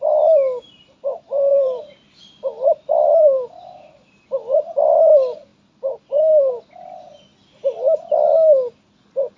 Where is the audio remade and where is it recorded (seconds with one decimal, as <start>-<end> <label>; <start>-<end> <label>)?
0.0-1.5 recorded; 1.5-4.8 remade; 4.8-5.5 recorded; 5.5-6.5 remade; 6.5-9.4 recorded